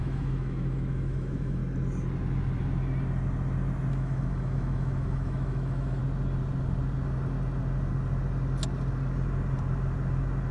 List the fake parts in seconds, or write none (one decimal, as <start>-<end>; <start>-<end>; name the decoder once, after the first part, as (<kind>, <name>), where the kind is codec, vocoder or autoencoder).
0.0-1.6 (autoencoder, DAC-VAE); 3.9-6.0